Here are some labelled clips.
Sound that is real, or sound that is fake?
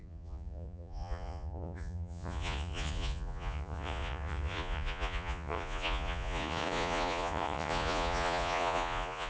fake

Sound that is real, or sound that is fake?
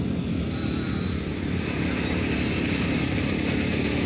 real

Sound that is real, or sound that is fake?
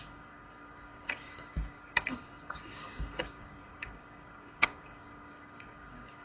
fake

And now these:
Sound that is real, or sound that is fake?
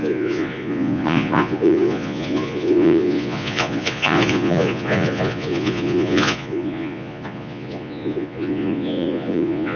fake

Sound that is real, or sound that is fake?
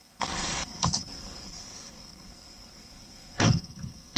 fake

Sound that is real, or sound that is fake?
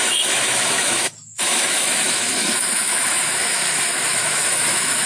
fake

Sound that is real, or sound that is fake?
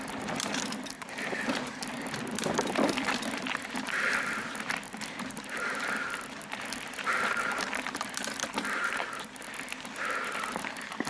fake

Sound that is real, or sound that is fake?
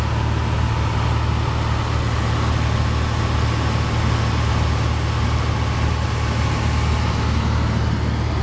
real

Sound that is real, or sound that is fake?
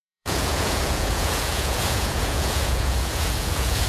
fake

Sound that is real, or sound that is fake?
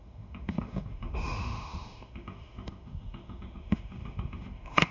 fake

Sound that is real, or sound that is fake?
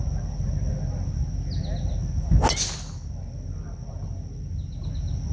real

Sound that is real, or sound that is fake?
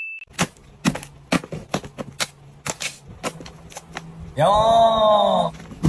real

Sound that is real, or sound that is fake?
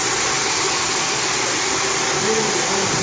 real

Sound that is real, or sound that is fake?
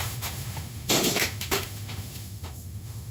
fake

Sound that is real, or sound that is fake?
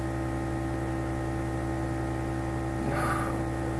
real